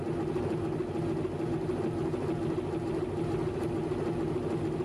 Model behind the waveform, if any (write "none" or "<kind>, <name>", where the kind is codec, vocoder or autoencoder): none